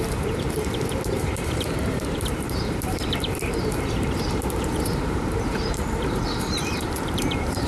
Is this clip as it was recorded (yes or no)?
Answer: no